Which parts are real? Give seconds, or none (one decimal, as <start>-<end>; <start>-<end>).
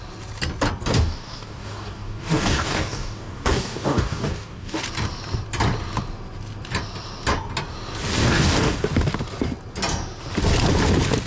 0.0-0.9; 4.8-8.2; 8.8-11.3